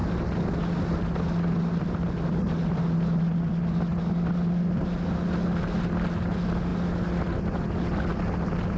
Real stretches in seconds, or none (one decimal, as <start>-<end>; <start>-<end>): 0.0-8.8